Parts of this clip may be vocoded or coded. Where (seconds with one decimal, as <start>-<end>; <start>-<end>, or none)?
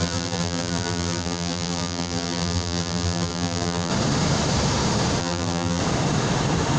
0.0-3.9; 5.2-5.8